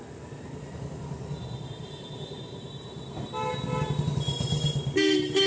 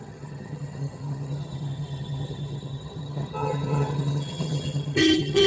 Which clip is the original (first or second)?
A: first